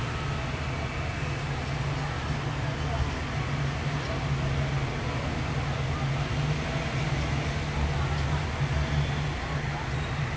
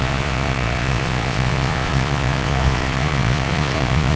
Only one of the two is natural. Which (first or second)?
first